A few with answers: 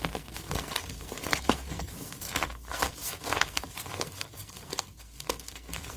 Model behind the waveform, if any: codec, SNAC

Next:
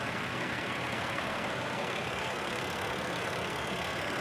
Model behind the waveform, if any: codec, SNAC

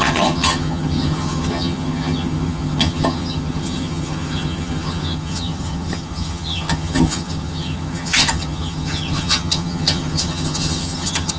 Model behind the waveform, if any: vocoder, HiFi-GAN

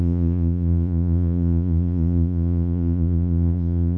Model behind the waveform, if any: vocoder, Vocos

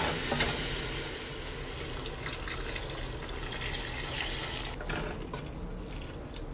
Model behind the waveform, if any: none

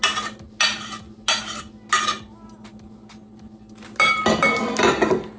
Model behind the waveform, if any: none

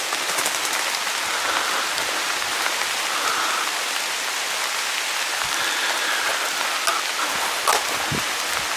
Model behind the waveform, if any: none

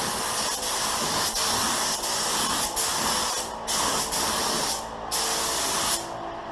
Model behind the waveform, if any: none